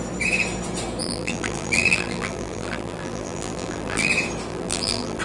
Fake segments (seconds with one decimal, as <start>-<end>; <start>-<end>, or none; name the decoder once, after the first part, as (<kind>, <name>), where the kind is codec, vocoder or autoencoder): 1.0-4.1 (vocoder, BigVGAN v2); 4.5-5.2